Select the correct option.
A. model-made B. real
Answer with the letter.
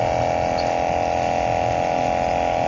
B